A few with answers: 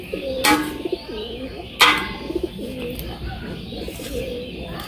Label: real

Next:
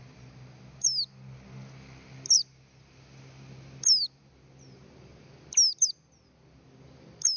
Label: real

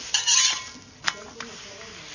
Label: real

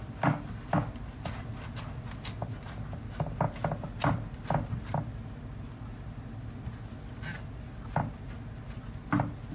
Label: real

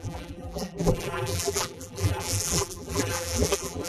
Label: fake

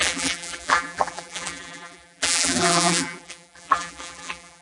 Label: fake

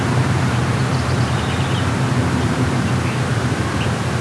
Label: fake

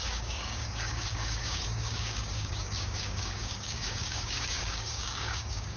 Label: fake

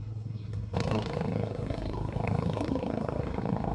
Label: fake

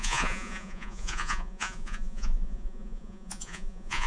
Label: fake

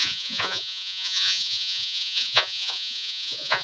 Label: fake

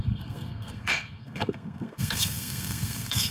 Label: fake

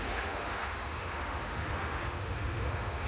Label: fake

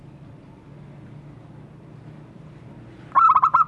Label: real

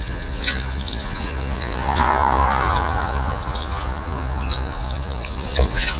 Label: fake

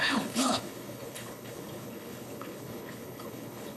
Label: fake